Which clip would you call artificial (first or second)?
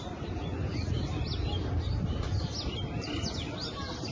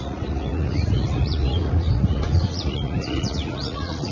second